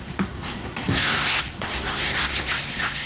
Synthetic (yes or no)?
yes